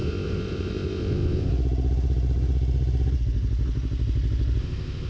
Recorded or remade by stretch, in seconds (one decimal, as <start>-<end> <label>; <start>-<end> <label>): 0.0-1.5 remade; 1.5-4.6 recorded; 4.6-5.1 remade